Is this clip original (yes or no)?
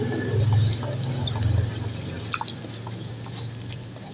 yes